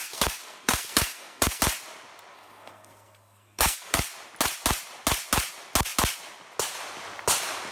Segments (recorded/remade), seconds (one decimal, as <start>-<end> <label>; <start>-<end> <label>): 0.0-1.6 remade; 1.6-2.3 recorded; 2.3-4.1 remade; 4.1-7.7 recorded

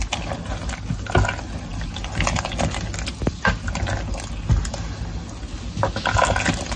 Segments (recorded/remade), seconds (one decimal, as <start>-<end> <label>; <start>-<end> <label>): 0.0-6.8 recorded

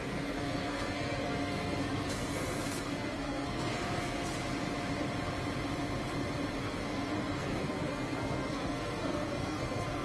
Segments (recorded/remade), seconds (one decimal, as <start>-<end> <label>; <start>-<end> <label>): 0.0-4.2 remade; 4.2-6.6 recorded; 6.6-10.0 remade